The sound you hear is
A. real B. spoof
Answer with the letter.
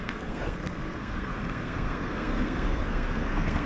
B